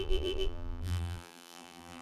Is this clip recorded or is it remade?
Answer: remade